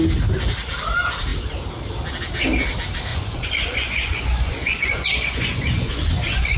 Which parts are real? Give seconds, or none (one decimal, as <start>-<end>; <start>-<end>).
0.0-3.1